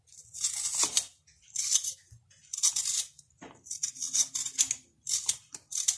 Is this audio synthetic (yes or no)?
no